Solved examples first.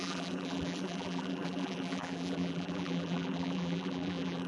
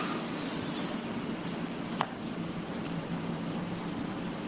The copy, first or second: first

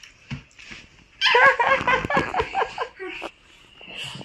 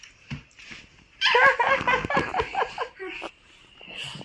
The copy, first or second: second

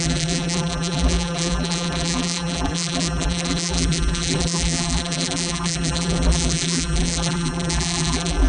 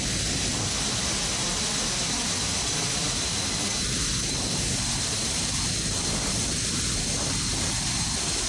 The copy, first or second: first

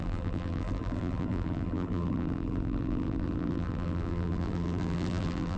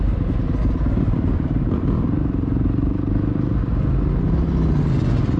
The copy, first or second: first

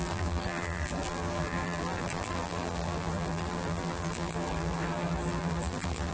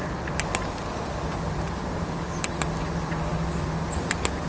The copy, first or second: first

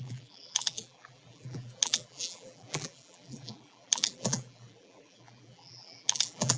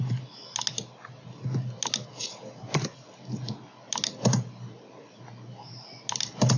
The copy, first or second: first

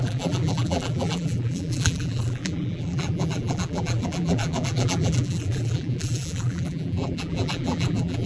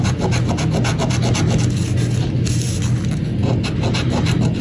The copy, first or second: first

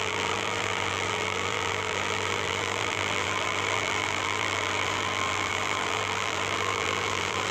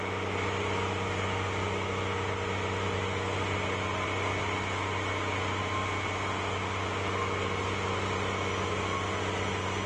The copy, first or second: first